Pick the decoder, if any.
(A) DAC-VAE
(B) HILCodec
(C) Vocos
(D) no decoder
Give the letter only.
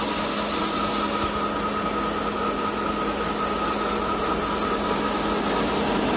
D